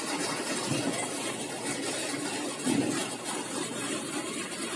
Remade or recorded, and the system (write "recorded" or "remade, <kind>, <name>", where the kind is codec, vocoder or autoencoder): recorded